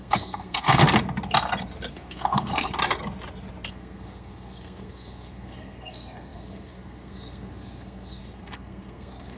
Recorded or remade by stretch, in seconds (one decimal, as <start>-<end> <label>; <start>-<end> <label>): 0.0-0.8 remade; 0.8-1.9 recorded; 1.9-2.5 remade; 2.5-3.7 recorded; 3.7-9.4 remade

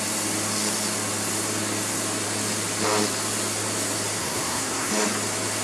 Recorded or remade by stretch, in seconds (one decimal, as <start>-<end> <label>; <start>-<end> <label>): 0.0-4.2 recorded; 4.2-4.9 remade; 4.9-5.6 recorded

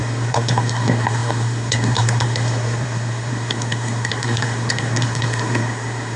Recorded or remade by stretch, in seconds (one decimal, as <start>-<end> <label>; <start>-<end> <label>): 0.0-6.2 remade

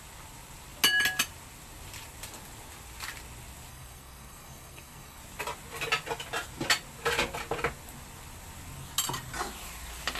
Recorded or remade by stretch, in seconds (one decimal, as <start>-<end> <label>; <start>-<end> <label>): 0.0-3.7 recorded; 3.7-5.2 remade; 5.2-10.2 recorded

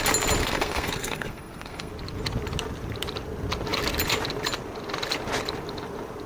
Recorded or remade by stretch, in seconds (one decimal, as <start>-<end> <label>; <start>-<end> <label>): 0.0-0.4 recorded; 0.4-1.9 remade; 1.9-6.3 recorded

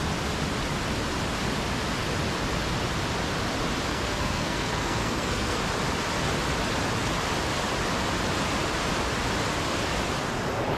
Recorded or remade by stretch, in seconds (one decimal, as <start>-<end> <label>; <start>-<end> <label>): 0.0-3.9 recorded; 3.9-5.6 remade; 5.6-10.8 recorded